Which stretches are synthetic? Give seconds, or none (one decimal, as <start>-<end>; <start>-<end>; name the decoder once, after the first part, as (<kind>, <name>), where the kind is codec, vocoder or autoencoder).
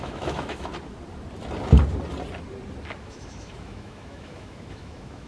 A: 0.0-0.7 (autoencoder, DAC-VAE); 3.0-5.3